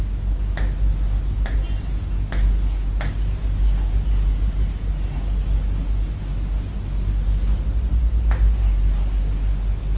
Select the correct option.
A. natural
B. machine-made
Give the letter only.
A